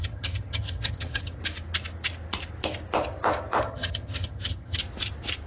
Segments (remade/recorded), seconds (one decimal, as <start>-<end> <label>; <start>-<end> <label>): 0.0-1.4 remade; 1.4-3.6 recorded; 3.6-4.8 remade; 4.8-5.5 recorded